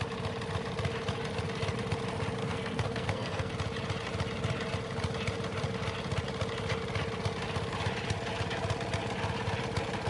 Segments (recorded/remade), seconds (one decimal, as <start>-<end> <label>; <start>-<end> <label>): 0.0-2.4 recorded; 2.4-3.5 remade; 3.5-10.1 recorded